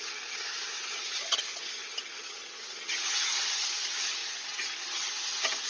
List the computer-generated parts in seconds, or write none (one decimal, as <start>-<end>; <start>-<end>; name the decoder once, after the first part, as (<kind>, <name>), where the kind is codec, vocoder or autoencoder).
0.0-5.7 (vocoder, HiFi-GAN)